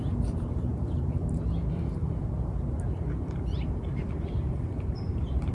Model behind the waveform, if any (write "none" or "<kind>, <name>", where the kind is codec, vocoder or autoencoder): vocoder, BigVGAN v2